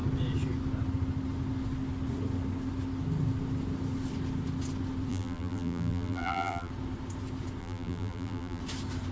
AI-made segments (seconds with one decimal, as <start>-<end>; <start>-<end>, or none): 5.1-6.7; 7.6-8.6